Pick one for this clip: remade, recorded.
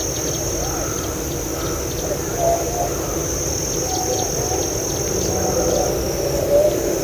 recorded